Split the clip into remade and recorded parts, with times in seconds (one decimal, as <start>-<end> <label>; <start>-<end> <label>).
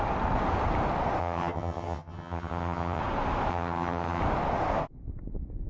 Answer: 0.0-1.2 recorded; 1.2-3.0 remade; 3.0-3.5 recorded; 3.5-4.2 remade; 4.2-5.7 recorded